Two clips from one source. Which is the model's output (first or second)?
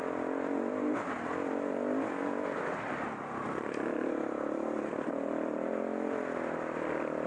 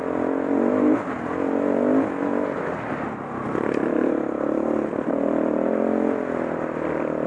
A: first